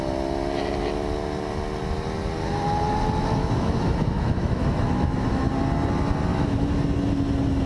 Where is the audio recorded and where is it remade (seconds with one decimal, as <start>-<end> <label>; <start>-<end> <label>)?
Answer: 0.0-3.4 recorded; 3.4-5.5 remade; 5.5-6.3 recorded; 6.3-6.8 remade; 6.8-7.7 recorded